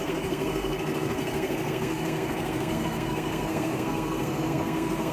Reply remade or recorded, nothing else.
remade